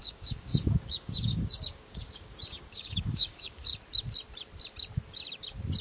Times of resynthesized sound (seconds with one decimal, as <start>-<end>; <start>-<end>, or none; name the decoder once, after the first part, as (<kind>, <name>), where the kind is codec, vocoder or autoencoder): 0.0-3.7 (codec, DAC)